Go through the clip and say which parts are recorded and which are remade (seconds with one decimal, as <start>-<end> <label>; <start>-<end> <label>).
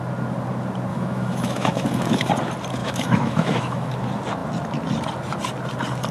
0.0-0.9 recorded; 0.9-2.3 remade; 2.3-2.8 recorded; 2.8-3.9 remade; 3.9-6.1 recorded